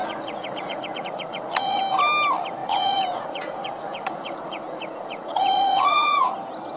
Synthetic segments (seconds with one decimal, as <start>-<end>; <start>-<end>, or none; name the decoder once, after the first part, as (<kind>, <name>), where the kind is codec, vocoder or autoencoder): 0.0-1.8 (vocoder, Vocos); 2.6-6.3